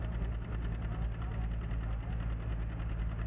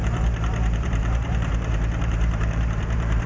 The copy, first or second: second